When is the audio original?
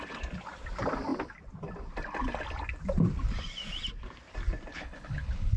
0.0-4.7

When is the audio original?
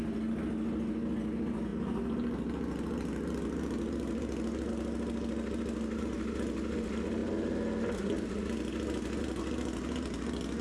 0.0-10.6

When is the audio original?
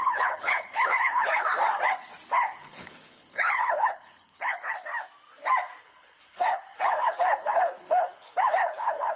1.6-2.3; 4.9-5.8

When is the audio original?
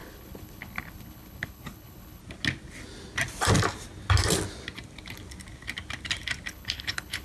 2.2-6.5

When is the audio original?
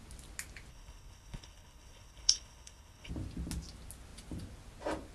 0.0-0.7; 3.1-5.1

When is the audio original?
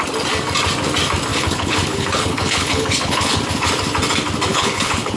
0.0-1.3; 3.4-4.5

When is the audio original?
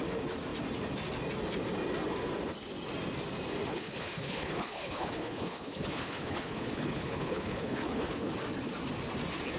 0.0-3.7; 8.3-9.6